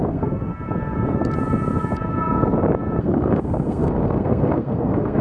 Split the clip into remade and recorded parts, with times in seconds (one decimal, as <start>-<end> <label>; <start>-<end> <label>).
0.0-0.5 remade; 0.5-3.0 recorded; 3.0-5.2 remade